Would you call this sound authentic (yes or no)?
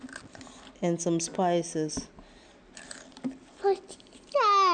yes